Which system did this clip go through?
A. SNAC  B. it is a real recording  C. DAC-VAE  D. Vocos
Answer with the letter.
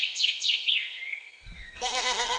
A